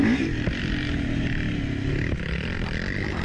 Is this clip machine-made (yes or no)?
no